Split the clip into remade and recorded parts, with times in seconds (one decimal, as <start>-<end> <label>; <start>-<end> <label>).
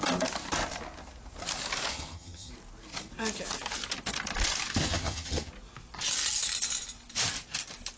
0.0-1.9 recorded; 1.9-2.5 remade; 2.5-4.8 recorded; 4.8-5.5 remade; 5.5-8.0 recorded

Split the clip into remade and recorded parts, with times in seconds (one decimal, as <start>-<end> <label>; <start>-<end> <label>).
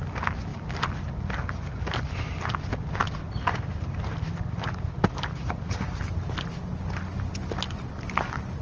0.0-3.2 recorded; 3.2-5.9 remade; 5.9-8.6 recorded